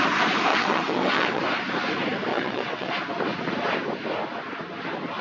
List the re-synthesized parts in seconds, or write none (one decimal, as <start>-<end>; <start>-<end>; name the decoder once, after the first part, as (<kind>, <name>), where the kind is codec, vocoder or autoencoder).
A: 0.5-1.4 (vocoder, WaveNeXt); 2.3-2.9